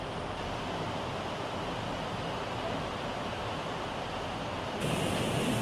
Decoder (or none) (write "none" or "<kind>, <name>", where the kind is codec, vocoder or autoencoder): none